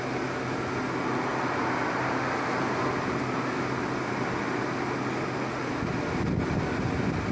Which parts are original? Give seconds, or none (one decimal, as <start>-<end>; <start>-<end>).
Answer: 0.0-7.3